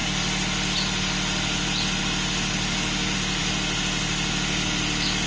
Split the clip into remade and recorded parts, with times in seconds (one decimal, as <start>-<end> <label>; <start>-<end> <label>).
0.0-5.3 recorded